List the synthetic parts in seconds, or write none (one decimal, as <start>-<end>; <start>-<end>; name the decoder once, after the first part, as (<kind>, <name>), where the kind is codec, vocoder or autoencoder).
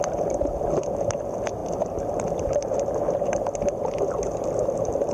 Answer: none